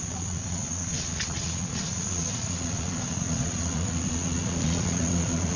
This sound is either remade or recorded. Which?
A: remade